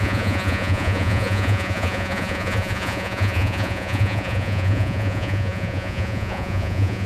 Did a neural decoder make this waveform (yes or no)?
yes